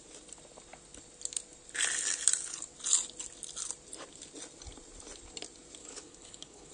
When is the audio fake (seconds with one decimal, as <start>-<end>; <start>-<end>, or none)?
5.8-6.7